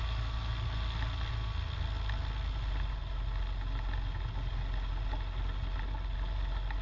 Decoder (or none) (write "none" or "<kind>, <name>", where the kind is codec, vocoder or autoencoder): none